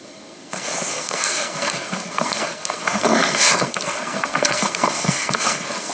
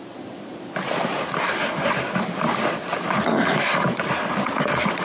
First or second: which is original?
second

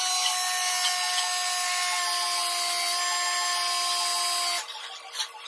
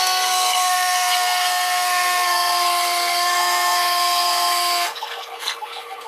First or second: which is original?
first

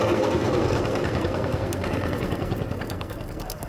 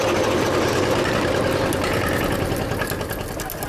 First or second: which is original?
second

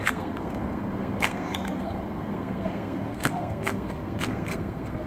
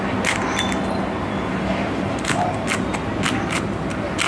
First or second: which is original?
second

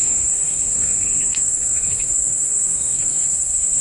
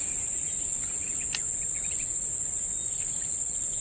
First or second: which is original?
second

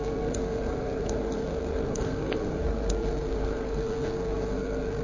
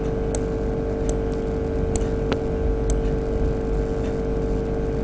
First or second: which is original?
second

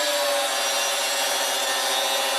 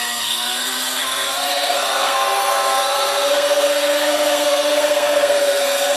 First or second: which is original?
first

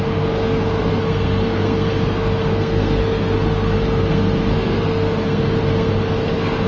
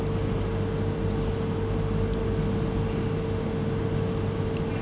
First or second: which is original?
second